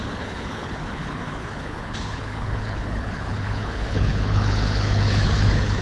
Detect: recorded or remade remade